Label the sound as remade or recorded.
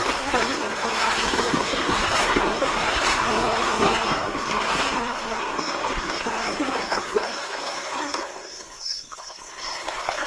remade